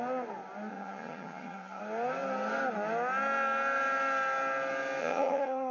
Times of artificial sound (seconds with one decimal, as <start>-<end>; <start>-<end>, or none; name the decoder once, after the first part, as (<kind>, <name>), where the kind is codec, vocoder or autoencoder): 0.7-1.8 (vocoder, HiFi-GAN); 5.0-5.7